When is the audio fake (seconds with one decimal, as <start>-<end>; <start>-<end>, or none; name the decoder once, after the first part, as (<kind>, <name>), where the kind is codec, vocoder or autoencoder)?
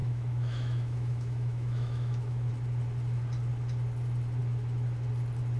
0.0-2.5 (autoencoder, DAC-VAE)